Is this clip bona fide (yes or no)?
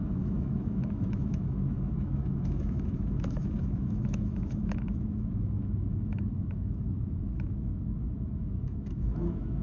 no